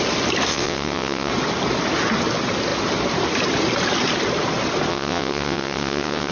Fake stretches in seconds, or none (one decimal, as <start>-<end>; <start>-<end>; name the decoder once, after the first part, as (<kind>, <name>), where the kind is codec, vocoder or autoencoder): 0.5-1.3 (vocoder, WaveNeXt); 4.9-6.3